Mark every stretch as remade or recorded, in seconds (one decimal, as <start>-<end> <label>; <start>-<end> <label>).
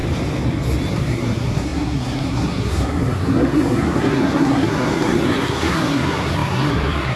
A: 0.0-0.9 recorded; 0.9-7.2 remade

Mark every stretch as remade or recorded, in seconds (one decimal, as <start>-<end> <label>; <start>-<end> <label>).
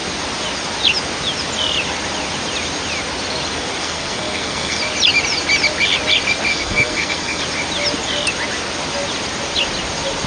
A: 0.0-3.8 recorded; 3.8-4.8 remade; 4.8-6.5 recorded; 6.5-7.4 remade; 7.4-10.3 recorded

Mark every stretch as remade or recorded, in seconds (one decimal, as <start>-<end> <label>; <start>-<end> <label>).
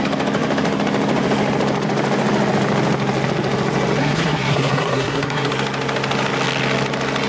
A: 0.0-4.0 recorded; 4.0-5.5 remade; 5.5-7.3 recorded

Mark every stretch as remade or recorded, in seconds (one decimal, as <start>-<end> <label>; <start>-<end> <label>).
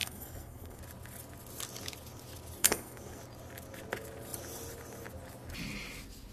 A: 0.0-0.8 remade; 0.8-2.6 recorded; 2.6-3.2 remade; 3.2-6.3 recorded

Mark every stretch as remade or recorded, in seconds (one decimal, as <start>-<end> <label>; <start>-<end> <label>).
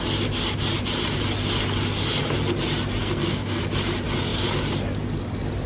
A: 0.0-3.0 recorded; 3.0-3.6 remade; 3.6-5.7 recorded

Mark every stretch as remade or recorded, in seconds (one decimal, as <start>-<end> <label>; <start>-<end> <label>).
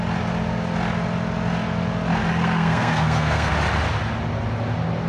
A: 0.0-2.3 recorded; 2.3-3.5 remade; 3.5-5.1 recorded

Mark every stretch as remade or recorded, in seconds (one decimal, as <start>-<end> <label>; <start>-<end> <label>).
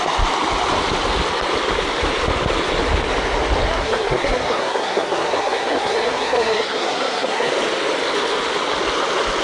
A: 0.0-3.7 recorded; 3.7-7.5 remade; 7.5-9.4 recorded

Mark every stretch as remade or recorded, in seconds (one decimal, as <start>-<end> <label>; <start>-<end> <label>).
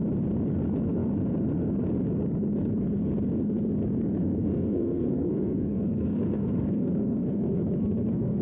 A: 0.0-4.2 recorded; 4.2-8.4 remade